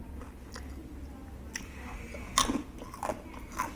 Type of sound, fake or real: real